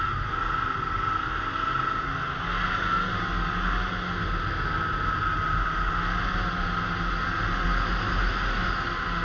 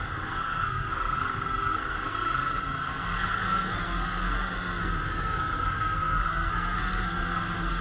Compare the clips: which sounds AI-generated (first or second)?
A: second